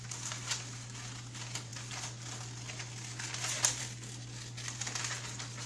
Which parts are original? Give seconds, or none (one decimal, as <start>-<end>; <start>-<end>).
0.0-5.7

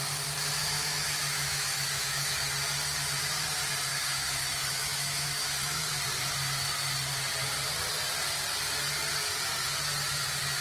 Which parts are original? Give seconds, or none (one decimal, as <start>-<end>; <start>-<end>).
0.0-0.6; 2.5-3.9; 5.9-10.6

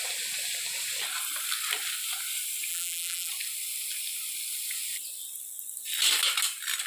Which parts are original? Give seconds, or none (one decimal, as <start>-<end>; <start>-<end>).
0.0-2.7; 3.3-6.9

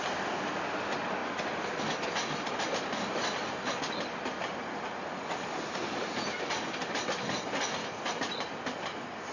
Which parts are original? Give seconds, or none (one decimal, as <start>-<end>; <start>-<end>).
0.0-9.3

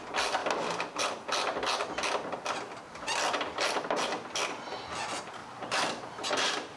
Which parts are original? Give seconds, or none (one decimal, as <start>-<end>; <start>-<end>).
0.0-5.4

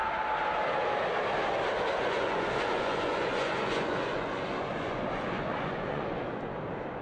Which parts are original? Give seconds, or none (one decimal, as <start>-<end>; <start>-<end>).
0.0-2.0; 6.2-7.0